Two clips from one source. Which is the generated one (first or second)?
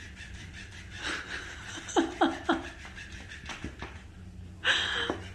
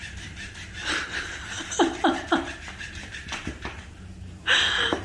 second